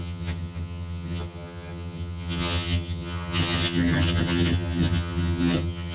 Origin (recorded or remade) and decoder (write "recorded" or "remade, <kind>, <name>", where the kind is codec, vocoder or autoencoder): remade, vocoder, HiFi-GAN